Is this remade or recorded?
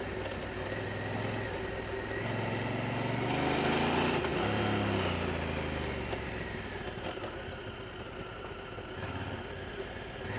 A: recorded